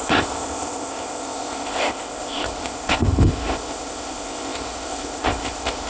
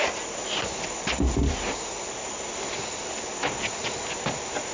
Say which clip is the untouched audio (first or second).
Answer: second